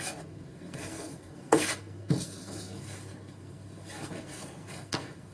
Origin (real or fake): fake